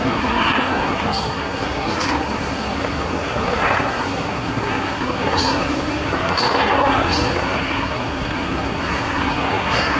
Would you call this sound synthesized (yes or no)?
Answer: yes